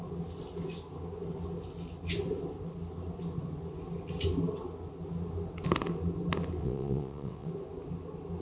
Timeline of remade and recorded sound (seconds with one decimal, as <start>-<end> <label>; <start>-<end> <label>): 0.0-6.6 recorded; 6.6-7.5 remade; 7.5-8.4 recorded